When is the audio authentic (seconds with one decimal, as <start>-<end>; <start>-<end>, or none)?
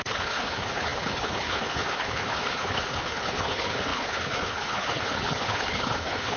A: none